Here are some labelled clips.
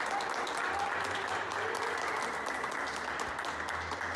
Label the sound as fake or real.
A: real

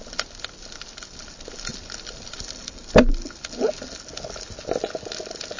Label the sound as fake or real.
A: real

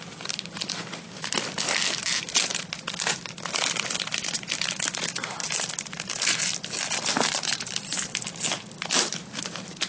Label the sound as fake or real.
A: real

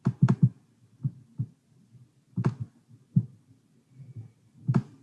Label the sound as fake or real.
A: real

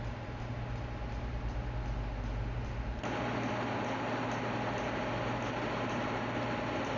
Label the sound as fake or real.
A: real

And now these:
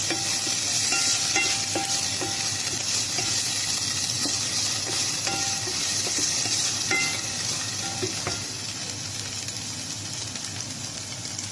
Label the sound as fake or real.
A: real